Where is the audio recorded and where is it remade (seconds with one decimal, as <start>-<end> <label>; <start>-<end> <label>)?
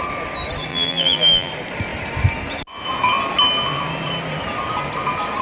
0.0-0.7 recorded; 0.7-1.5 remade; 1.5-5.4 recorded